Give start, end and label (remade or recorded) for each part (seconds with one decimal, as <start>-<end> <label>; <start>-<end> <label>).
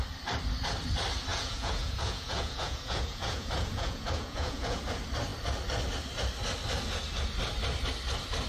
0.0-1.3 recorded; 1.3-4.8 remade; 4.8-8.5 recorded